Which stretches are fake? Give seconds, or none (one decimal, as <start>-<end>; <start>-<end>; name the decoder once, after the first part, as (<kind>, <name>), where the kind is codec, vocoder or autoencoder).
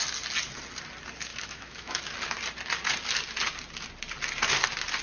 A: 1.3-2.0 (autoencoder, DAC-VAE)